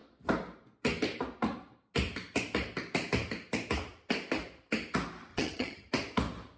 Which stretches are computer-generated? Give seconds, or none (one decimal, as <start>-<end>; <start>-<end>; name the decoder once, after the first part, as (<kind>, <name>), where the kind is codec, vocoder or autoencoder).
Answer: 5.3-5.9 (vocoder, HiFi-GAN)